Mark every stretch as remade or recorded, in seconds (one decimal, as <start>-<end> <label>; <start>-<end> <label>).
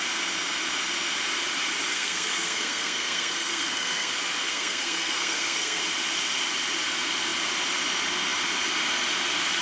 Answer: 0.0-1.9 recorded; 1.9-4.1 remade; 4.1-4.5 recorded; 4.5-5.8 remade; 5.8-9.6 recorded